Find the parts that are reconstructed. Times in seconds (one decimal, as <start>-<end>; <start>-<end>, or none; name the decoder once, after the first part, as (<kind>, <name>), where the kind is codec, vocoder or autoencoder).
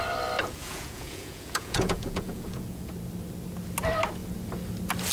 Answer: 0.4-2.9 (vocoder, Vocos)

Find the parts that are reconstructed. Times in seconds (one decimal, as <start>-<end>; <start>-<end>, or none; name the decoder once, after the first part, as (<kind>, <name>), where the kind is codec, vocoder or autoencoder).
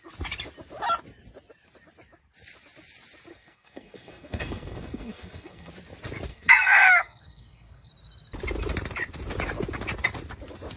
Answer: 3.3-5.7 (codec, SNAC); 6.3-7.9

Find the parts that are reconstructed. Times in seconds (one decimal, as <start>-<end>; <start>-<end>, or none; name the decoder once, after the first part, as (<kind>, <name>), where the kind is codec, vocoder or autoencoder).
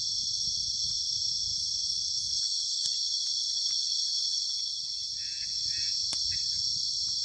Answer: none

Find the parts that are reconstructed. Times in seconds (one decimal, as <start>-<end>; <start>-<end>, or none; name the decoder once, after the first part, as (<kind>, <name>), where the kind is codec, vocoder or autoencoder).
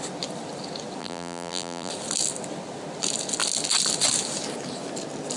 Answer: 1.0-1.9 (vocoder, BigVGAN v2)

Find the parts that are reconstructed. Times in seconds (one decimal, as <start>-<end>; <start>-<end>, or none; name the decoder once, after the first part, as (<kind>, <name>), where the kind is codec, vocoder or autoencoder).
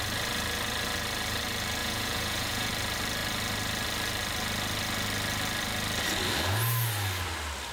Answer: 1.8-2.7 (vocoder, Vocos)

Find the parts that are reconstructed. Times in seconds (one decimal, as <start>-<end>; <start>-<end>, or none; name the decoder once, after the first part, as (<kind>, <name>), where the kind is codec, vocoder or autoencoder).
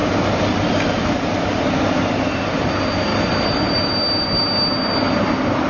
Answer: 3.1-4.4 (vocoder, BigVGAN v2)